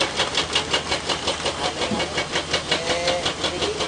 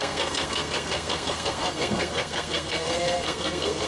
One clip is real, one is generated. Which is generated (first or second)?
second